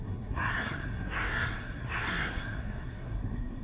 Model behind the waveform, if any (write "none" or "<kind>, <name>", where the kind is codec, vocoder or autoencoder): codec, SNAC